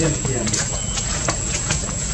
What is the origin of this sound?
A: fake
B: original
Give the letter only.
A